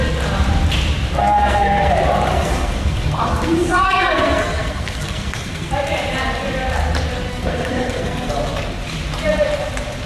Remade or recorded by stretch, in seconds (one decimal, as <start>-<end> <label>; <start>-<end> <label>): 0.0-1.2 recorded; 1.2-1.9 remade; 1.9-2.3 recorded; 2.3-5.7 remade; 5.7-7.3 recorded; 7.3-8.3 remade; 8.3-10.1 recorded

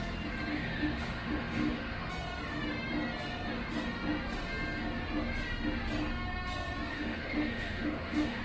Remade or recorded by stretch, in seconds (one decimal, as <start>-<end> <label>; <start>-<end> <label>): 0.0-0.5 recorded; 0.5-2.1 remade; 2.1-6.9 recorded; 6.9-8.4 remade

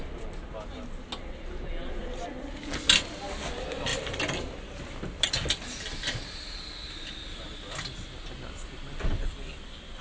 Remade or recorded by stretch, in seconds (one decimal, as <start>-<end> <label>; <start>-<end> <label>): 0.0-10.0 recorded